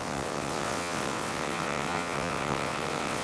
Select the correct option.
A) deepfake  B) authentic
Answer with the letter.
A